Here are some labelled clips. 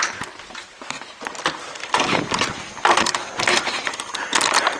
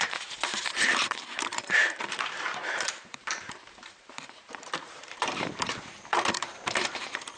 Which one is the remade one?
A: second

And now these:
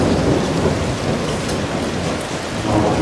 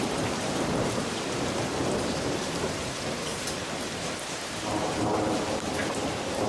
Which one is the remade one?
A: second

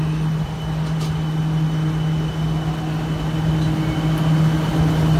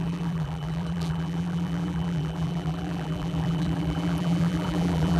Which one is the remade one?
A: second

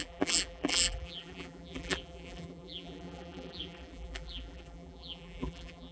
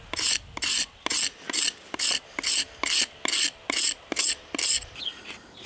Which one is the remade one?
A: first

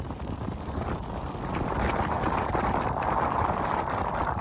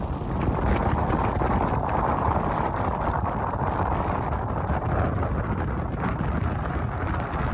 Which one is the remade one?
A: first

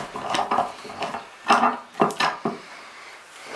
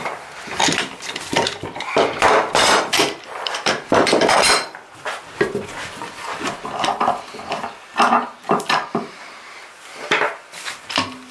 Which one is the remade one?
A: second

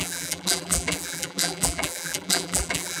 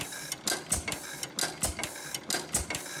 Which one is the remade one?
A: first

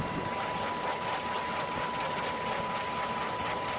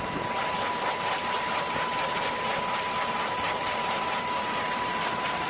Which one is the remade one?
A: second